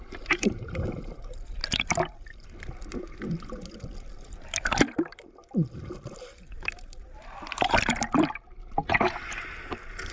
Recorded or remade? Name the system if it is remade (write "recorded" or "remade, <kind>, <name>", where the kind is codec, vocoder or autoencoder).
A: recorded